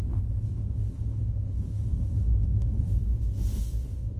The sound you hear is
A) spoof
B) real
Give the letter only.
A